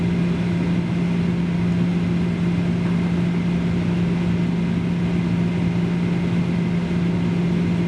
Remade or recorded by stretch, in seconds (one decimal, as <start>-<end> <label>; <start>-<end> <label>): 0.0-7.9 recorded